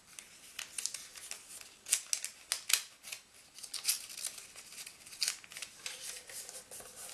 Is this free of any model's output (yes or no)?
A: yes